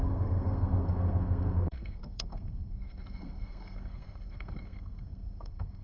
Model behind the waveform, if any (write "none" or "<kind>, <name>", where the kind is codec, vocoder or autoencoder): codec, SNAC